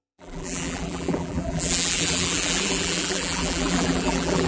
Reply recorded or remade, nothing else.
remade